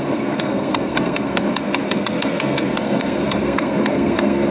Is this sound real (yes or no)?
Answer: no